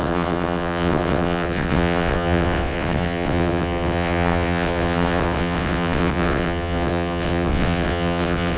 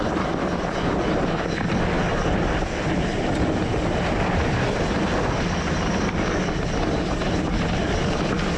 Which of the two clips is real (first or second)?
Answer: second